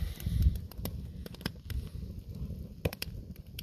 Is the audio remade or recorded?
remade